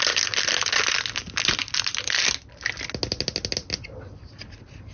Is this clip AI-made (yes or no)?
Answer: no